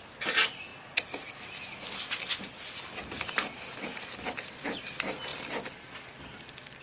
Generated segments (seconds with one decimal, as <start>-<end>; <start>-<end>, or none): none